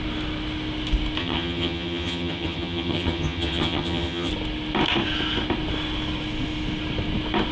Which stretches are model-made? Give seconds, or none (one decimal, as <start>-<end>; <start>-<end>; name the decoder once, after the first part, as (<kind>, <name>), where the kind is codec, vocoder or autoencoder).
1.2-4.3 (vocoder, HiFi-GAN)